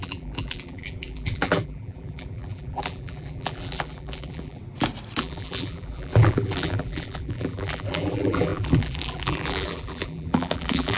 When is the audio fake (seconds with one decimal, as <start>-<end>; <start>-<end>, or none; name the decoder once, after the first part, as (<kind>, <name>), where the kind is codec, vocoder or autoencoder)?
0.0-4.6 (vocoder, BigVGAN v2); 5.2-11.0